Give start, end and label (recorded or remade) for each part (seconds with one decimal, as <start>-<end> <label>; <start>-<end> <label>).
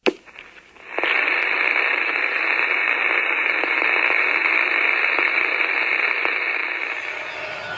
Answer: 0.0-7.8 recorded